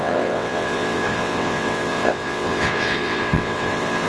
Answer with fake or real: fake